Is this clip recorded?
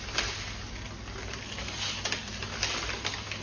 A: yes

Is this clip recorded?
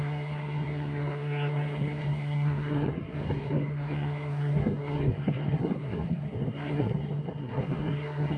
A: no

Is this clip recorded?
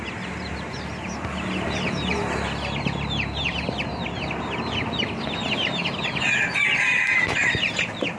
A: yes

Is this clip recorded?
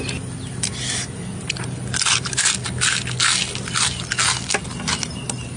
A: yes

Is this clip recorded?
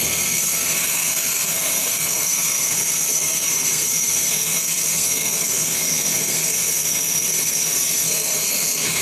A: no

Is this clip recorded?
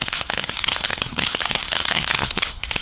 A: no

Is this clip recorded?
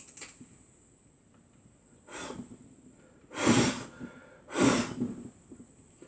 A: yes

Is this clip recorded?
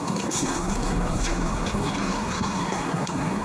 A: no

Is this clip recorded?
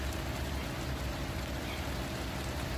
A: yes